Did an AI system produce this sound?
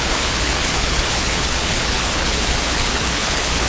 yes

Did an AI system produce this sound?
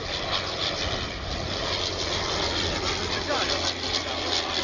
yes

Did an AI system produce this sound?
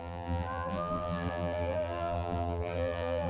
yes